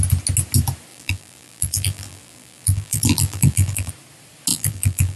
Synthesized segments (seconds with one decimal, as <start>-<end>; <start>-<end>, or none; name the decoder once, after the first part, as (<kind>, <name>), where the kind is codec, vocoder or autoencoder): 0.9-3.9 (vocoder, BigVGAN v2); 4.5-5.2